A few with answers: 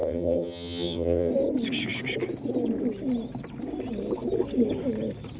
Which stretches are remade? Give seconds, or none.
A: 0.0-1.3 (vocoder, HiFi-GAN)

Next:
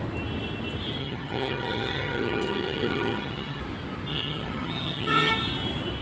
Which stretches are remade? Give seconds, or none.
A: 1.0-3.6 (vocoder, HiFi-GAN); 4.1-5.3

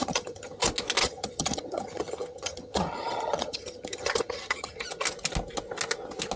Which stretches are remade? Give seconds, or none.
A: 0.0-0.6 (vocoder, HiFi-GAN); 1.0-4.8

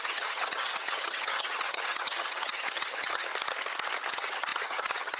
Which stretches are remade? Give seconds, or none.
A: 0.0-3.3 (vocoder, HiFi-GAN); 4.1-5.2

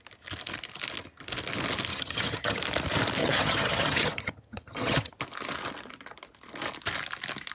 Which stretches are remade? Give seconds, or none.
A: 1.9-2.6 (vocoder, HiFi-GAN); 3.2-5.1

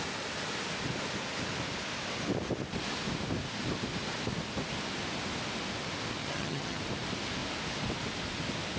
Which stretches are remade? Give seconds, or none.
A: 6.2-6.8 (vocoder, HiFi-GAN)